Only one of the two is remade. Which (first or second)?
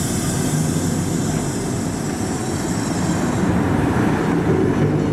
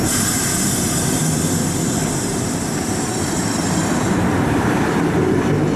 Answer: second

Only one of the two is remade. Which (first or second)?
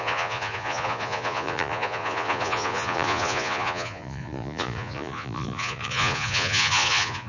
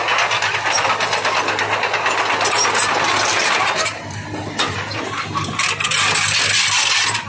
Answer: first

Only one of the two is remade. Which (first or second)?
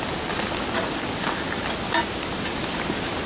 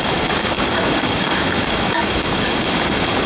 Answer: second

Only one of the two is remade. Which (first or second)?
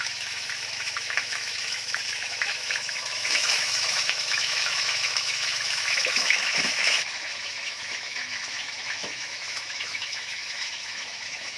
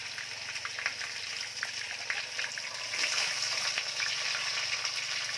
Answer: first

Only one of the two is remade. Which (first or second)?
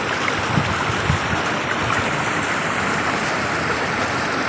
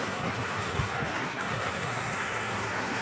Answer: second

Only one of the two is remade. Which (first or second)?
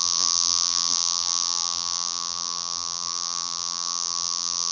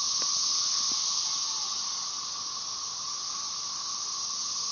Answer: first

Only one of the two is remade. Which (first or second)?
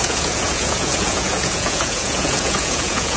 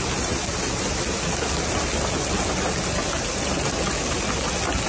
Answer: first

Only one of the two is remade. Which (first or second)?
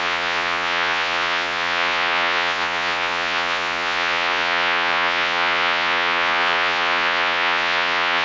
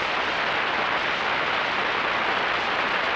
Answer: first